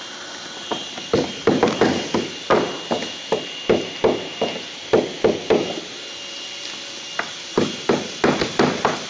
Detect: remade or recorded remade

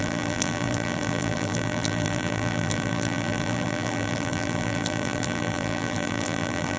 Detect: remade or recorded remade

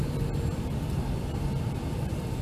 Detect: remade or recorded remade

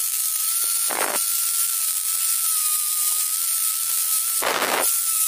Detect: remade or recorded remade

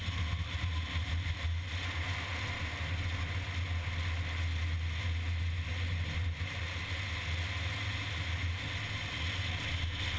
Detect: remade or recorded recorded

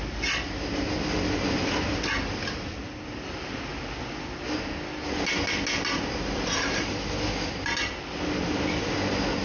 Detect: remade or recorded recorded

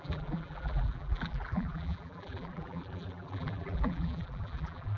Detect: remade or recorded remade